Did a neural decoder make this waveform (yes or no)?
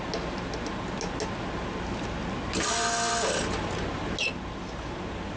no